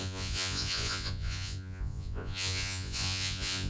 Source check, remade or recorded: remade